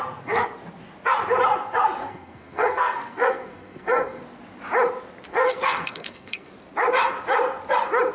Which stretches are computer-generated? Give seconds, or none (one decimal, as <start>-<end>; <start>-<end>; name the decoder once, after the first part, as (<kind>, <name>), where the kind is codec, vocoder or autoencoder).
2.0-4.2 (codec, SNAC); 5.3-6.5